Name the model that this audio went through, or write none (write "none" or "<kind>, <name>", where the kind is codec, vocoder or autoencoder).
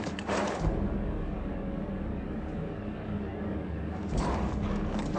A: codec, DAC